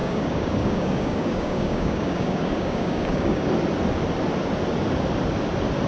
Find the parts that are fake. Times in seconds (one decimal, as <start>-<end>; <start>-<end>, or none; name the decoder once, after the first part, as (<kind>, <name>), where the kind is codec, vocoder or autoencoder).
0.0-3.5 (codec, DAC)